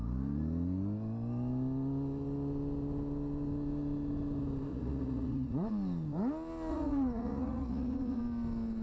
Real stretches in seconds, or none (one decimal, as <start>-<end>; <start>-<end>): 0.0-4.7; 5.7-6.7; 8.2-8.8